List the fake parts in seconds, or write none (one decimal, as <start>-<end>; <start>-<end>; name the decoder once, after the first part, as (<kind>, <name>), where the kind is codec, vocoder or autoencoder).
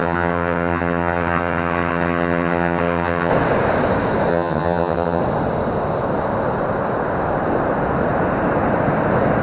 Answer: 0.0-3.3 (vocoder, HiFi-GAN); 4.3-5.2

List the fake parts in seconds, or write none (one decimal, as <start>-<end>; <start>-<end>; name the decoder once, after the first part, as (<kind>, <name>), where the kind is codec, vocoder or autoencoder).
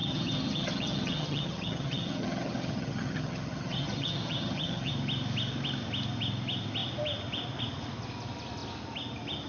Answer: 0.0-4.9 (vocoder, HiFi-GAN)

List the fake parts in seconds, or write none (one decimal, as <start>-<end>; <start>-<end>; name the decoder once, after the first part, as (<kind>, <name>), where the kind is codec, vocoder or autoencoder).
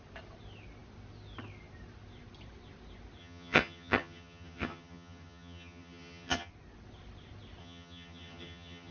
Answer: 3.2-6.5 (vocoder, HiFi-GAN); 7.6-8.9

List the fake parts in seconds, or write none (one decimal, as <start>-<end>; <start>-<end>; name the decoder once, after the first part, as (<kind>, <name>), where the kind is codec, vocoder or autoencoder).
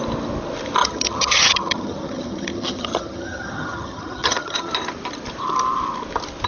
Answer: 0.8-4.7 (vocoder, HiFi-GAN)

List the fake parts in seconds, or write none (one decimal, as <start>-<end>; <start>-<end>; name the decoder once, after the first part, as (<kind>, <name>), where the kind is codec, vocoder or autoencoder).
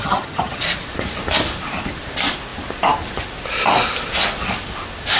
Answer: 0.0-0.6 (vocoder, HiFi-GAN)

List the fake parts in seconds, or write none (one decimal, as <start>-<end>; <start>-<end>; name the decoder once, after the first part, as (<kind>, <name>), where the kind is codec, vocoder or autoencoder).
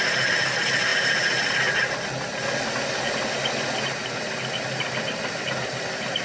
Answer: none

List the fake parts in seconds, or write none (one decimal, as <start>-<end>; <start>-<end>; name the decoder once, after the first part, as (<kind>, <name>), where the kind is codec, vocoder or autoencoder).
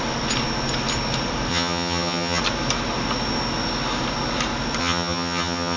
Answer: 1.5-2.4 (vocoder, HiFi-GAN); 4.8-5.8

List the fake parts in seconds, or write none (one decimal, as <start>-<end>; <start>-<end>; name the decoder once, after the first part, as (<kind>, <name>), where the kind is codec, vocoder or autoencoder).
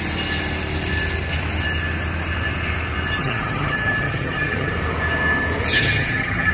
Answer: 3.2-4.7 (vocoder, HiFi-GAN); 5.7-6.5